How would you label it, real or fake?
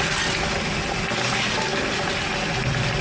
real